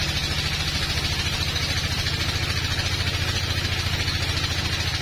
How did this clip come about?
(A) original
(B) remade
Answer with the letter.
A